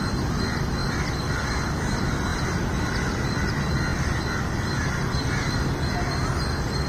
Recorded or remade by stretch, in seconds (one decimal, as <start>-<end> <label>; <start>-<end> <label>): 0.0-6.9 recorded

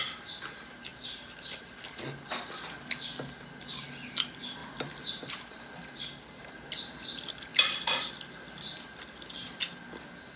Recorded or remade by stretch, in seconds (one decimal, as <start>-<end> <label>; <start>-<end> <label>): 0.0-4.6 recorded; 4.6-5.3 remade; 5.3-7.5 recorded; 7.5-8.1 remade; 8.1-10.4 recorded

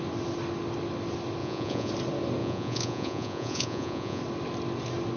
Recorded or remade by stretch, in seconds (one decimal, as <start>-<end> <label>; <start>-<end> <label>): 0.0-1.4 recorded; 1.4-1.9 remade; 1.9-2.4 recorded; 2.4-4.2 remade; 4.2-5.2 recorded

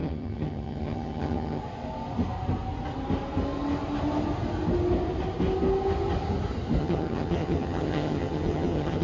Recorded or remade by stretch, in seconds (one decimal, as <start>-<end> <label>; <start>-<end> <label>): 0.0-1.6 remade; 1.6-6.8 recorded; 6.8-9.0 remade

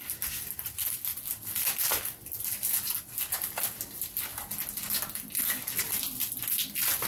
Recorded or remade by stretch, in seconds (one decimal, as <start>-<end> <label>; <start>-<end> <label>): 0.0-7.1 recorded

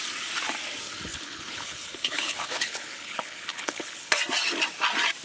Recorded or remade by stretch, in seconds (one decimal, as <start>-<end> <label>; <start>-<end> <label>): 0.0-1.1 recorded; 1.1-4.2 remade; 4.2-5.2 recorded